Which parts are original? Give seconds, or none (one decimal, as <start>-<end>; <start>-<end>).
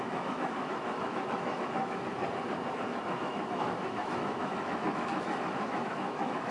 2.1-3.2